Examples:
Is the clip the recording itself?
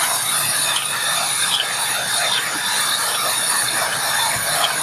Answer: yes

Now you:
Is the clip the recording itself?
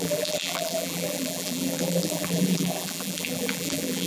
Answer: no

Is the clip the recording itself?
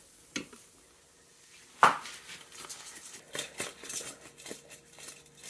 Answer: yes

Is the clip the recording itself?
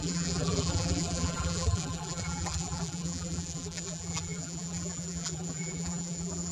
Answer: no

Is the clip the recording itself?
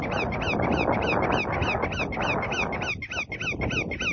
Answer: yes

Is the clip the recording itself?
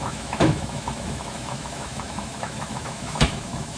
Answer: no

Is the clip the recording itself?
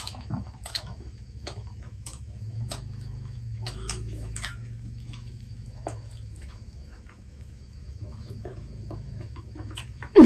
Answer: no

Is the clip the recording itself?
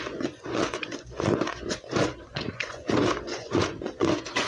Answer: no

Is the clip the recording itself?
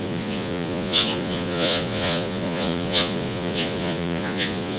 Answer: no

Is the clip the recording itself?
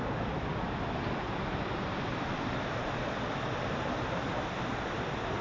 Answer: yes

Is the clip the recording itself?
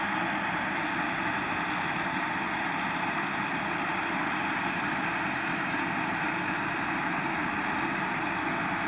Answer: yes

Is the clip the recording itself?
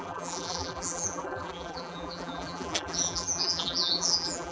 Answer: no